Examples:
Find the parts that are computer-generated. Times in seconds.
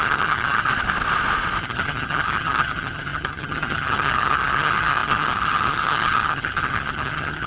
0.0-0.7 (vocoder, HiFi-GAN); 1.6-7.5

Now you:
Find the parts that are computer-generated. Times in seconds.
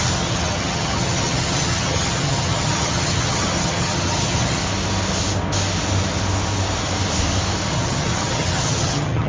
0.0-4.6 (vocoder, HiFi-GAN); 7.7-9.3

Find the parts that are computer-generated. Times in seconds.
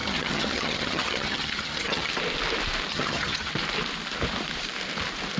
0.0-2.1 (vocoder, HiFi-GAN); 2.9-3.5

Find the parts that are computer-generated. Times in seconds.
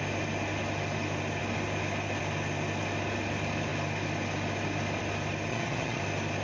5.5-6.0 (vocoder, HiFi-GAN)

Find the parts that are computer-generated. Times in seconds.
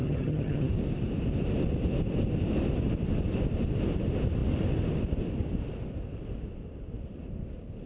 0.0-0.7 (vocoder, HiFi-GAN)